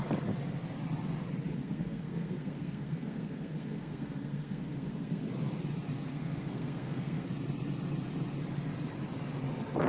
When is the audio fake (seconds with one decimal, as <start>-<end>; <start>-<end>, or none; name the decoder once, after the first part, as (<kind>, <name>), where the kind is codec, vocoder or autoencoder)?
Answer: 1.6-5.3 (codec, SNAC); 6.1-7.3